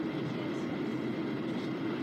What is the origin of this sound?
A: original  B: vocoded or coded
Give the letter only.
B